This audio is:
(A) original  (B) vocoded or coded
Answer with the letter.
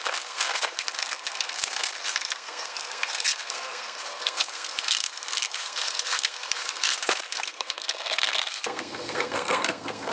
B